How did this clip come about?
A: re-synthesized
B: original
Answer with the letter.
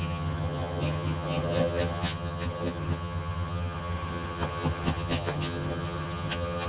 A